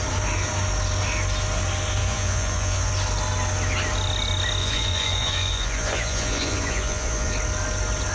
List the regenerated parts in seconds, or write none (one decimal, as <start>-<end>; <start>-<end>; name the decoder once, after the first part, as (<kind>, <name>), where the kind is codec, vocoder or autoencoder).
2.0-2.9 (vocoder, Vocos); 4.6-7.3